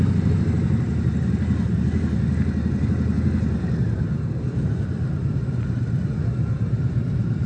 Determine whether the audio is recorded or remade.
recorded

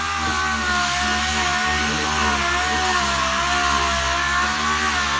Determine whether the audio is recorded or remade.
recorded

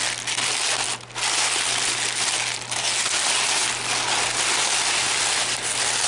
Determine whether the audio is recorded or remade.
recorded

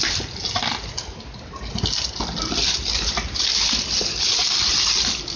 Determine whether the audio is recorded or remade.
recorded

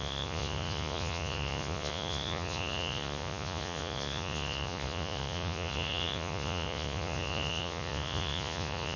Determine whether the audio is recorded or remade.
remade